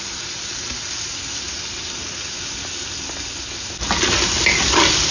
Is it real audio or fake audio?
real